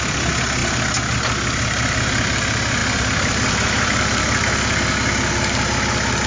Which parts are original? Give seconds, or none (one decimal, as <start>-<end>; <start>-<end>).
0.0-6.3